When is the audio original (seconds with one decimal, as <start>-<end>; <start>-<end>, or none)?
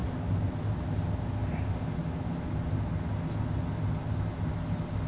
0.0-5.1